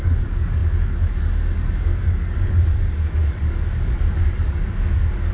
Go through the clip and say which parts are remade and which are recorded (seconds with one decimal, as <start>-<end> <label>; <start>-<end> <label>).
0.0-5.3 remade